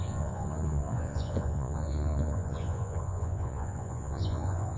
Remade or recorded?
remade